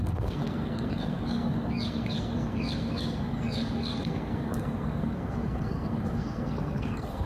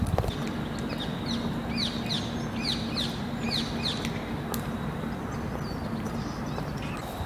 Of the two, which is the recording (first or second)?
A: second